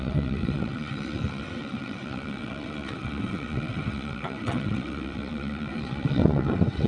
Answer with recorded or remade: remade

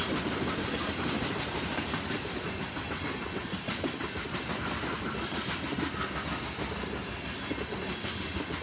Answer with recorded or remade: recorded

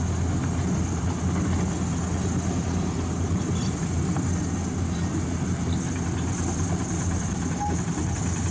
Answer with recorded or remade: recorded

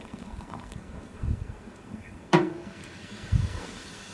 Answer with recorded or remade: remade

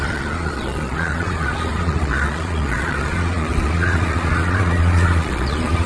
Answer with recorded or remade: remade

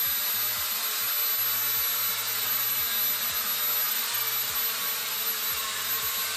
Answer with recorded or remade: recorded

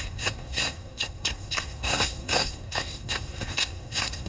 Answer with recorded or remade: remade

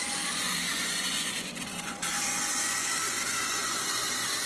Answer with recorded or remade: remade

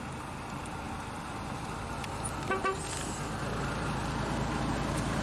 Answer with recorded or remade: recorded